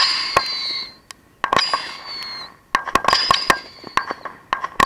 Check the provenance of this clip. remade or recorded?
recorded